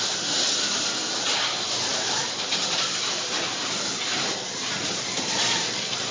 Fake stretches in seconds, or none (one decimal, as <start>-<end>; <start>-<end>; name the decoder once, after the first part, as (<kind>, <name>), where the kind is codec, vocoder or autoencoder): 1.9-5.6 (vocoder, BigVGAN v2)